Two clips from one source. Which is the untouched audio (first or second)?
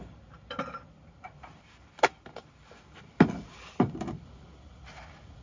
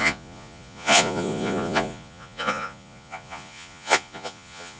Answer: first